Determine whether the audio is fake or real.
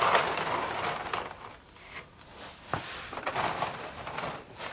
real